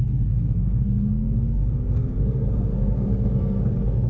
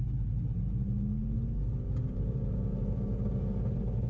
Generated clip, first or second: first